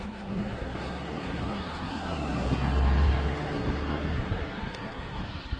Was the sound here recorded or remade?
remade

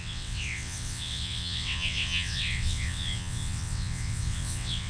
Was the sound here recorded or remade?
remade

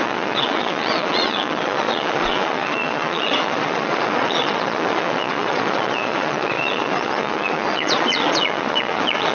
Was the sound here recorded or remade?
remade